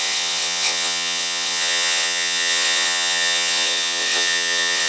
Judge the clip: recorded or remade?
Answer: remade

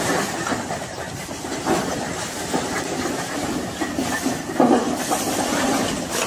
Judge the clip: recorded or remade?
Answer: remade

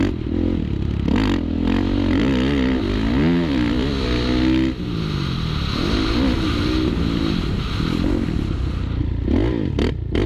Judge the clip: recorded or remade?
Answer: recorded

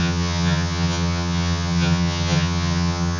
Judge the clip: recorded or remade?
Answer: remade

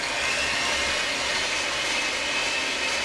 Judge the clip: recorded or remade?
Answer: recorded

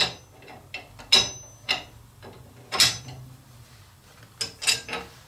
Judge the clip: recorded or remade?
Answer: recorded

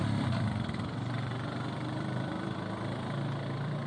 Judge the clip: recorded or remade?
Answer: remade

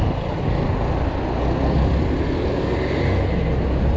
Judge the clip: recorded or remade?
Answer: recorded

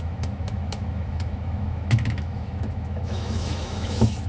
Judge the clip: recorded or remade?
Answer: remade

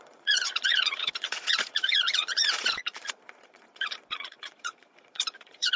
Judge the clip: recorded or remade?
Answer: remade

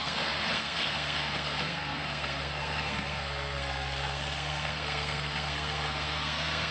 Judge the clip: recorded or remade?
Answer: remade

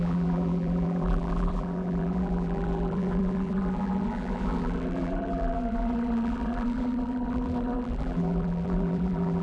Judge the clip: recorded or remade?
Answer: remade